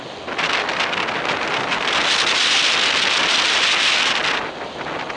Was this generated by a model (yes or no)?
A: no